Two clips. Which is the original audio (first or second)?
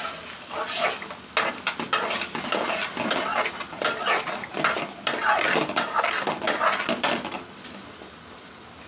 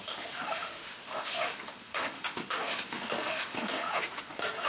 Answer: first